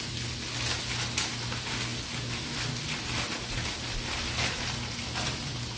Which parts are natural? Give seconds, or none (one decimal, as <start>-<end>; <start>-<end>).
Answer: 0.0-5.8

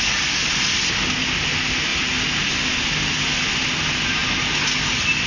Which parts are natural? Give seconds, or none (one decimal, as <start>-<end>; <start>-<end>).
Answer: 0.0-5.3

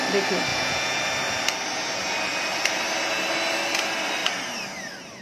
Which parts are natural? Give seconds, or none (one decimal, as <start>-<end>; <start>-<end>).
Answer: 0.0-0.5; 1.0-5.2

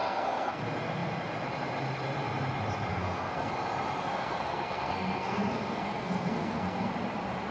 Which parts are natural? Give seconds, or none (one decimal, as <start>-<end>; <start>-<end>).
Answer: 0.6-2.9; 3.5-4.1; 6.9-7.5

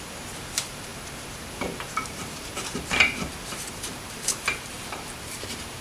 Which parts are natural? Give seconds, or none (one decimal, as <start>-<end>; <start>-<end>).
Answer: none

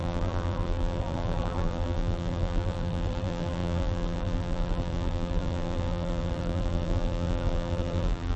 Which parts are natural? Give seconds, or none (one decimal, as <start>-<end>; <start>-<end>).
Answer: none

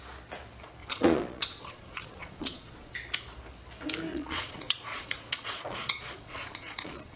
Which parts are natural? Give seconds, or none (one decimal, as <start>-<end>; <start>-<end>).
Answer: 0.0-0.8; 2.9-4.1

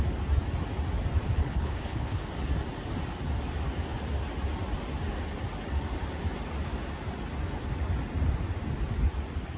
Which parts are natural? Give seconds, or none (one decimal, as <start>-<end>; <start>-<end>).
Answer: 0.0-1.4; 2.2-9.6